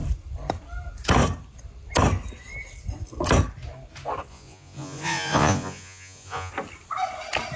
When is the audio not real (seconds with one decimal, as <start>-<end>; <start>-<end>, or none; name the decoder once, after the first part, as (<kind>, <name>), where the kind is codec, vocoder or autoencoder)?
4.3-6.5 (vocoder, Vocos)